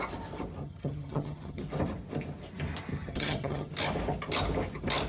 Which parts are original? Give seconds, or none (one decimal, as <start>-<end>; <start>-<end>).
0.0-0.6; 1.6-2.9; 3.7-5.1